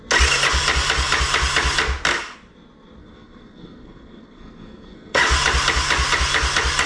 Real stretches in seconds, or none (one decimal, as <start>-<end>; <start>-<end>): 0.0-3.0; 5.2-6.9